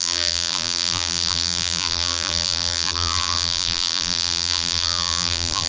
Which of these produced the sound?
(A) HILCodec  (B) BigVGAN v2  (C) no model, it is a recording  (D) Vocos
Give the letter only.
B